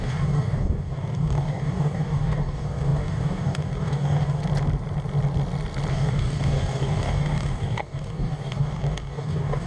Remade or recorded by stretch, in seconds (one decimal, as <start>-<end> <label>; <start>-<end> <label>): 0.0-4.4 remade; 4.4-5.9 recorded; 5.9-9.7 remade